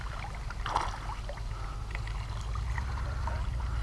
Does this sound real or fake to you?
real